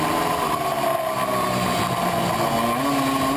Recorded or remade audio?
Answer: recorded